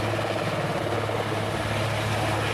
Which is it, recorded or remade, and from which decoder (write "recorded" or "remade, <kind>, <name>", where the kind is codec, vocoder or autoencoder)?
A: recorded